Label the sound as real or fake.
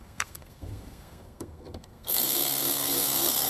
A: fake